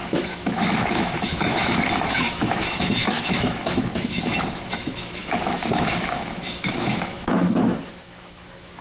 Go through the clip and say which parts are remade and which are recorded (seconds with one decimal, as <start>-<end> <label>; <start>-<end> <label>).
0.0-8.8 remade